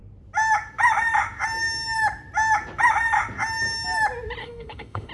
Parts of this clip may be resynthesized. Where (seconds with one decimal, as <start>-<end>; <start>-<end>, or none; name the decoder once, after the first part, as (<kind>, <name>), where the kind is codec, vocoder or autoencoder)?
4.4-5.1 (autoencoder, DAC-VAE)